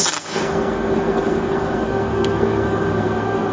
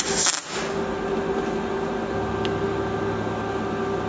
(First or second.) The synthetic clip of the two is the first